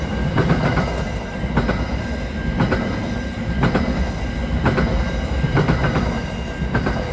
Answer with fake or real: real